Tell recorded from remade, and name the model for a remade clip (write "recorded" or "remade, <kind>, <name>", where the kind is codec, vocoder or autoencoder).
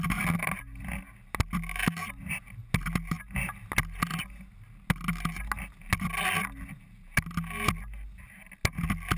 recorded